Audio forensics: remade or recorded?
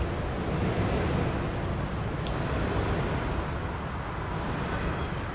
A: recorded